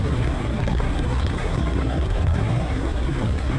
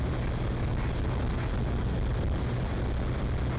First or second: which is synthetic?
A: first